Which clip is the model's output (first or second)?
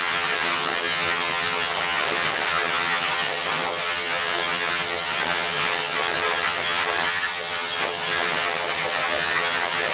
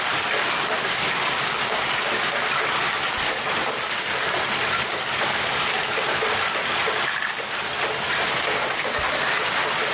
first